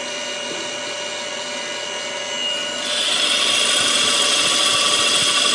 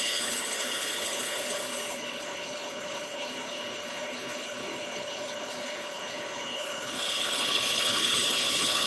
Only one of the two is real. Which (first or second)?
first